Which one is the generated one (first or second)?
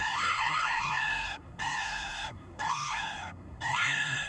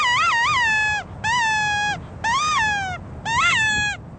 first